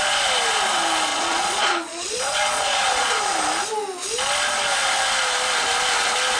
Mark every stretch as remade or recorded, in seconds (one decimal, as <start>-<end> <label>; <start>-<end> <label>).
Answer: 0.0-1.1 recorded; 1.1-3.2 remade; 3.2-6.4 recorded